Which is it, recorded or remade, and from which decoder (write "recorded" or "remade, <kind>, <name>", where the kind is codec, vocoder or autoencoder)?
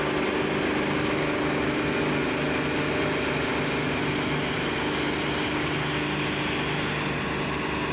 recorded